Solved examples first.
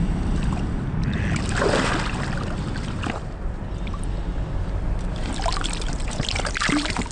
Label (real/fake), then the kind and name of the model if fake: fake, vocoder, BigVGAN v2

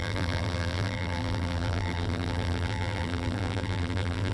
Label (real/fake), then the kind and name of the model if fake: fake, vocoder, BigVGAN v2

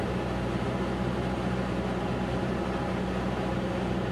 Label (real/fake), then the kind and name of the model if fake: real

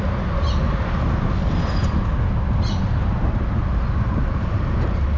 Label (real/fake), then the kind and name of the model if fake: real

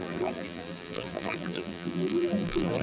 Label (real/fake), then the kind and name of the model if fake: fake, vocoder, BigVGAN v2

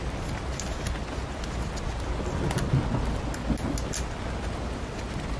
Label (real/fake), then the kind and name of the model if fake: real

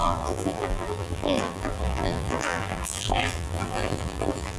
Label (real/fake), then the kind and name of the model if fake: fake, vocoder, BigVGAN v2